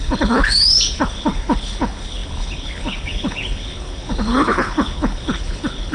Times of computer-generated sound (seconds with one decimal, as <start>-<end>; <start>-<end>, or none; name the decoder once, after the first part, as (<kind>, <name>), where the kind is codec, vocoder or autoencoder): 0.0-5.9 (codec, HILCodec)